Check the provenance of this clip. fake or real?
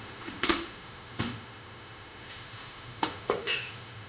fake